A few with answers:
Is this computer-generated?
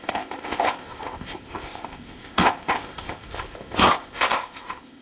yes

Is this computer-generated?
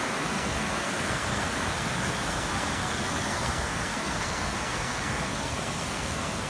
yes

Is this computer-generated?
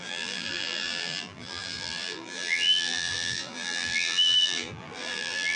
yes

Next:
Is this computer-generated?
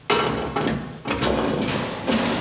no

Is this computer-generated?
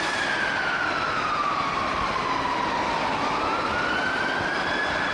no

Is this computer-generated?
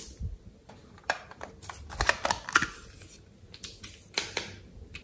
no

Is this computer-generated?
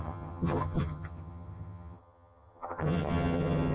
yes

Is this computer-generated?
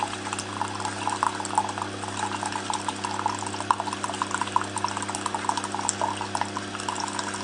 no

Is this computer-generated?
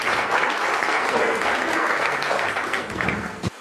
yes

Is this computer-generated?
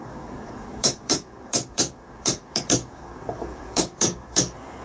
yes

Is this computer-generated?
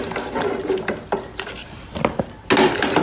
no